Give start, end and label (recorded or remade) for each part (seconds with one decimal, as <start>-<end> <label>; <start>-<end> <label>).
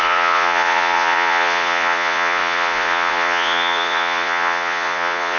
0.0-5.4 remade